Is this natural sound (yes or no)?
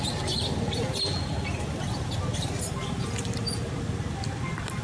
yes